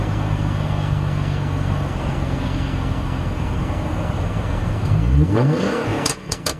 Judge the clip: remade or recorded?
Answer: remade